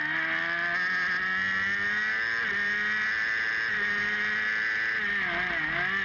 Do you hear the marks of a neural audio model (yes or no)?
no